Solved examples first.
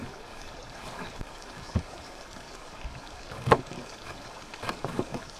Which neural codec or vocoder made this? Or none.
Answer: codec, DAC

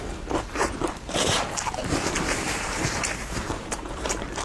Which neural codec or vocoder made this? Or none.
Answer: vocoder, BigVGAN v2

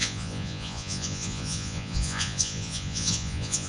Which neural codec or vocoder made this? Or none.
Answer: vocoder, Vocos